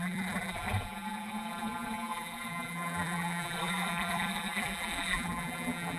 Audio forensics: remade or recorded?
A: remade